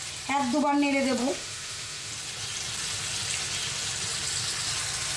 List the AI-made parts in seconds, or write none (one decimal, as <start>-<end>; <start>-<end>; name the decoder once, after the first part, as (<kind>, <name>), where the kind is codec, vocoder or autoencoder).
1.2-2.1 (autoencoder, DAC-VAE)

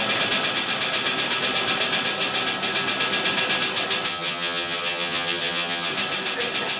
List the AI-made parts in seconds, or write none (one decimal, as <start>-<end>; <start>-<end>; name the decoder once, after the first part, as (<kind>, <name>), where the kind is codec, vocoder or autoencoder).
4.1-5.9 (vocoder, HiFi-GAN)

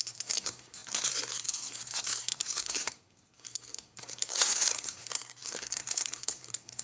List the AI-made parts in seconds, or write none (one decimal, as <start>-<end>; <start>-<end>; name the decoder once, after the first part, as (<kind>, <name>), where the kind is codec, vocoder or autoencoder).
0.0-6.8 (codec, SNAC)